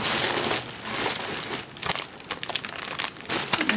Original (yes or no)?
yes